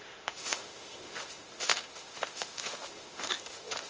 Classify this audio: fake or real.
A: fake